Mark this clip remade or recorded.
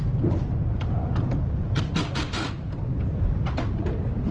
recorded